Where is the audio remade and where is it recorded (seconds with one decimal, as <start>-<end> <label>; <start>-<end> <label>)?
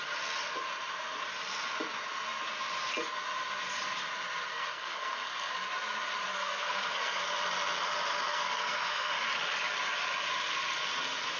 0.0-4.5 recorded; 4.5-5.5 remade; 5.5-6.3 recorded; 6.3-7.2 remade; 7.2-8.3 recorded; 8.3-9.1 remade; 9.1-11.4 recorded